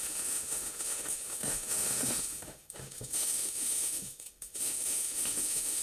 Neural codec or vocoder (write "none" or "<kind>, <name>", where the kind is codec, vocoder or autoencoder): autoencoder, DAC-VAE